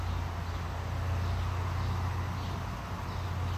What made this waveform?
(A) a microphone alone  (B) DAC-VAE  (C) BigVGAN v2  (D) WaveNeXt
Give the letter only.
A